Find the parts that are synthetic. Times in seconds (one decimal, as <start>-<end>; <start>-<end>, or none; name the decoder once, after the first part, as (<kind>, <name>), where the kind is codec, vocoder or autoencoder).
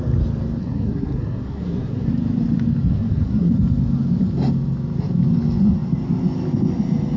0.6-2.1 (codec, SNAC); 2.9-3.5